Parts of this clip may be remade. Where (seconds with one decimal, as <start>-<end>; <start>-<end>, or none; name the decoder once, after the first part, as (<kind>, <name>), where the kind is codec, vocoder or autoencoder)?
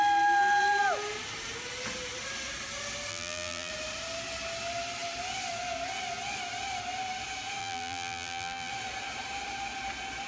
3.1-3.7 (vocoder, BigVGAN v2); 7.6-8.7